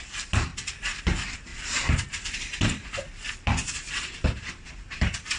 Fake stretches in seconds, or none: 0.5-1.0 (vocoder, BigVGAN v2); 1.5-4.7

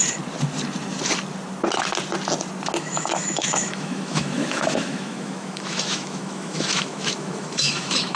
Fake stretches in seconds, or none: 2.8-8.2 (autoencoder, DAC-VAE)

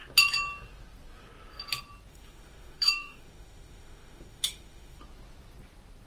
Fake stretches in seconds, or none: 2.1-5.0 (autoencoder, DAC-VAE)

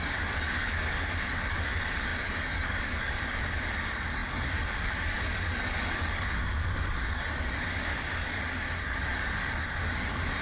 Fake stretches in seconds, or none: 0.0-10.4 (codec, DAC)

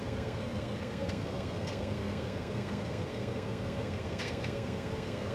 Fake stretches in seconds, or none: 0.0-5.3 (codec, SNAC)